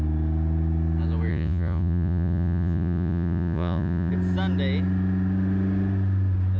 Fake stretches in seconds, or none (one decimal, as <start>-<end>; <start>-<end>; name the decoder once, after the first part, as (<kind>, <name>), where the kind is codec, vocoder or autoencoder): 1.3-4.1 (vocoder, Vocos)